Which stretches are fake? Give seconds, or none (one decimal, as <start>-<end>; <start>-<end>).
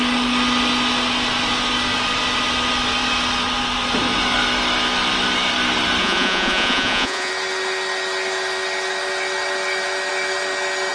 6.0-7.3